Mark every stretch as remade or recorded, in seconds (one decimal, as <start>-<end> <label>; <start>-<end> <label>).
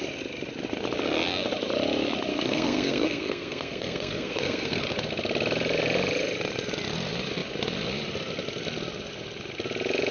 0.0-2.3 recorded; 2.3-4.8 remade; 4.8-10.1 recorded